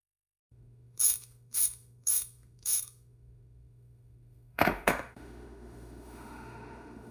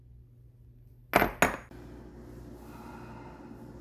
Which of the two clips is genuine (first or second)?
second